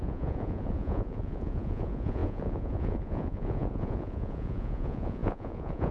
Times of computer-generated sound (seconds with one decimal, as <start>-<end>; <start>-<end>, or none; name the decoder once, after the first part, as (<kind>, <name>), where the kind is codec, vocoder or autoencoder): 0.0-5.9 (vocoder, Vocos)